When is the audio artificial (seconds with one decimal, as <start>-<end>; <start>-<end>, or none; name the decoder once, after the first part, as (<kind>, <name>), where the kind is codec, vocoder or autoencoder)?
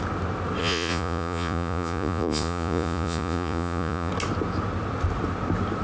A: 0.6-4.1 (vocoder, Vocos)